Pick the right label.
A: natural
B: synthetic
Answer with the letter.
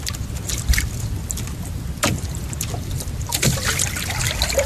A